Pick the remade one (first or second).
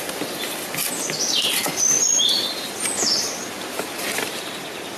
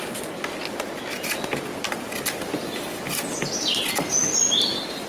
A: first